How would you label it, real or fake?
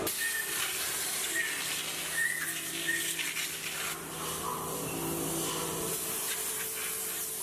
real